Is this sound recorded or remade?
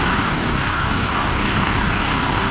remade